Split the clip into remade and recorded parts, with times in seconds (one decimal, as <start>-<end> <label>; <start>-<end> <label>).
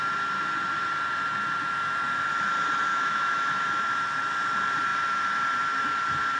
0.0-2.9 recorded; 2.9-3.7 remade; 3.7-6.4 recorded